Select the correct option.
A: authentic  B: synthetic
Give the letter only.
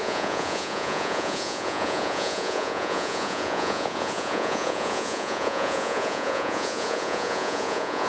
B